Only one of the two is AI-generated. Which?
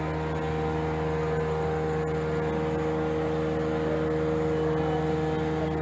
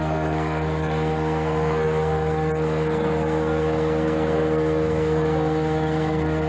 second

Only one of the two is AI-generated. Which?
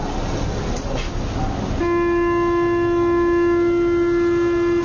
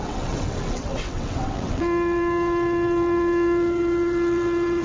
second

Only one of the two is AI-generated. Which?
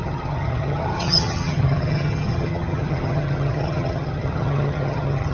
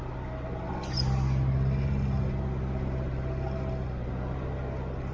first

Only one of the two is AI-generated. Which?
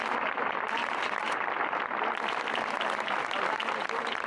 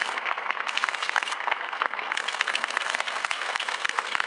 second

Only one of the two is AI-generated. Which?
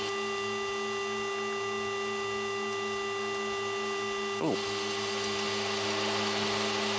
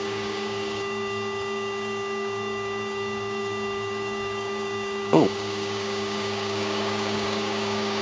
second